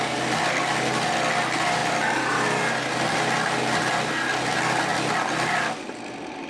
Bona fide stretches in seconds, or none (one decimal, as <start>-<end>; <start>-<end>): 0.0-6.5